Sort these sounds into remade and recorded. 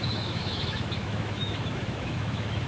remade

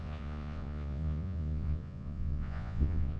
remade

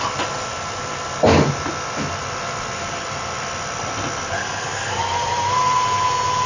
recorded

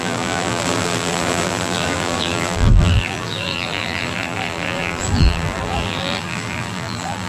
remade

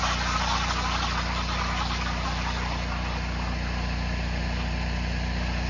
recorded